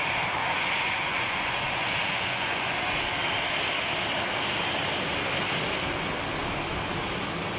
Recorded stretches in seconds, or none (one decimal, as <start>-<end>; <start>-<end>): 0.0-0.4; 3.0-7.6